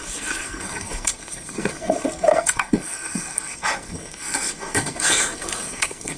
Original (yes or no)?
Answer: no